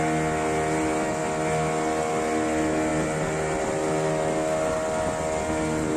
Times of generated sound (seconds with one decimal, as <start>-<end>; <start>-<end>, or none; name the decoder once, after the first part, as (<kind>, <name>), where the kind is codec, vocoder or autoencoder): none